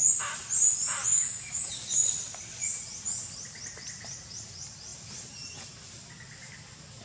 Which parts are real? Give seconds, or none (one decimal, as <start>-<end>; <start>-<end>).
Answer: 0.0-1.0; 1.7-7.0